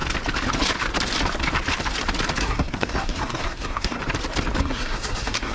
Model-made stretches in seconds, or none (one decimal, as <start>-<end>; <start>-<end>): 2.4-4.0; 4.6-5.5